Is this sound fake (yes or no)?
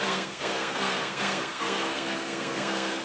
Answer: yes